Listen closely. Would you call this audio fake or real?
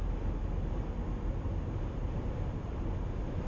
real